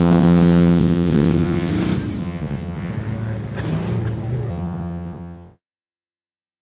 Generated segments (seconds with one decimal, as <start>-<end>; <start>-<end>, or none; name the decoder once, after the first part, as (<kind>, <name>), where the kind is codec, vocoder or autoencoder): 0.0-1.7 (vocoder, WaveNeXt); 2.2-2.9; 4.5-6.6